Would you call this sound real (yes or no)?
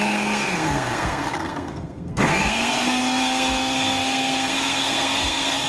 no